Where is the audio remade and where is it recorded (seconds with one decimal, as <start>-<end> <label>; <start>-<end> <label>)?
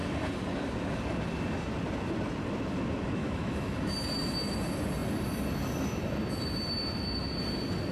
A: 0.0-3.2 recorded; 3.2-3.9 remade; 3.9-7.9 recorded